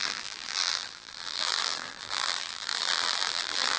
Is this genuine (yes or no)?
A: no